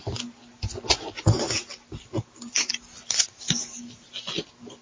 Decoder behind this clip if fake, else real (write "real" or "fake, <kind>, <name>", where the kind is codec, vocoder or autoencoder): real